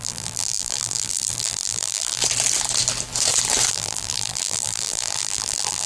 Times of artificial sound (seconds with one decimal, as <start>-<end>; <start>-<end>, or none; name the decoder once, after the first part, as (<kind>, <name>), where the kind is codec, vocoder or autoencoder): 0.0-2.2 (vocoder, BigVGAN v2); 3.7-5.9